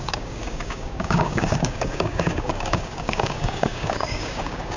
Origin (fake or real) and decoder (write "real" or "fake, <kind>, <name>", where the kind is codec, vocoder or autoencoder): fake, codec, DAC